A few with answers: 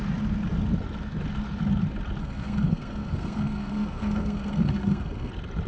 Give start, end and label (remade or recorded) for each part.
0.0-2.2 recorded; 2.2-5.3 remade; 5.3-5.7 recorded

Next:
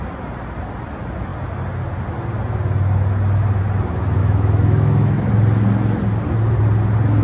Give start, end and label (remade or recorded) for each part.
0.0-4.2 recorded; 4.2-5.3 remade; 5.3-7.2 recorded

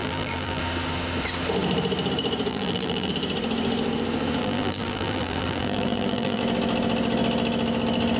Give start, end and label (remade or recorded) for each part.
0.0-0.6 remade; 0.6-2.5 recorded; 2.5-3.1 remade; 3.1-4.4 recorded; 4.4-6.4 remade; 6.4-8.2 recorded

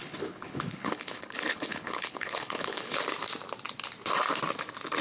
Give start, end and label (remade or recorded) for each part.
0.0-3.0 remade; 3.0-5.0 recorded

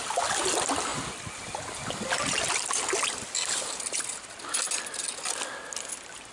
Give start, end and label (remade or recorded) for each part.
0.0-6.3 recorded

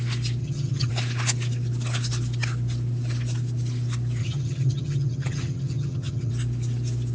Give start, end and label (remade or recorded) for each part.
0.0-0.4 recorded; 0.4-0.9 remade; 0.9-4.2 recorded; 4.2-6.3 remade; 6.3-7.1 recorded